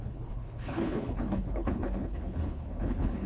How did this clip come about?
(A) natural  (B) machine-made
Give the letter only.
B